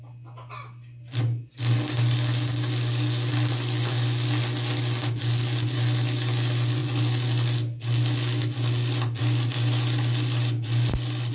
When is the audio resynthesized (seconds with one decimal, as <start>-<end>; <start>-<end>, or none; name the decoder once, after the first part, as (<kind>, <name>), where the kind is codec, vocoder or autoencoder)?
none

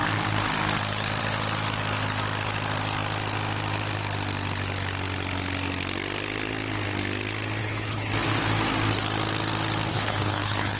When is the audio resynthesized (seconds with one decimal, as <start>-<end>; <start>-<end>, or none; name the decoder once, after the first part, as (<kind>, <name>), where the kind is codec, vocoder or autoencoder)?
7.6-8.1 (codec, HILCodec); 9.9-10.8

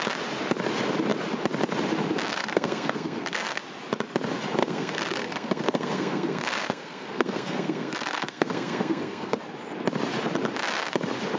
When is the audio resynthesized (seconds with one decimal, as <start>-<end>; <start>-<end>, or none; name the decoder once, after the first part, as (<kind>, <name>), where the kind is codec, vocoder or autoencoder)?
2.3-3.6 (codec, SNAC); 4.6-9.4